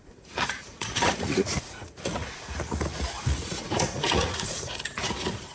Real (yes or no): no